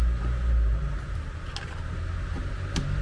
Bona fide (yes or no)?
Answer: yes